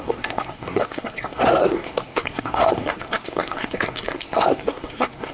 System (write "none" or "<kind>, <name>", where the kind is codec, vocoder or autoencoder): codec, SNAC